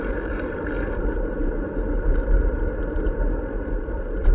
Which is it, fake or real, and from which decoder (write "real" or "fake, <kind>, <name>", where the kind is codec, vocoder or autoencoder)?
fake, vocoder, BigVGAN v2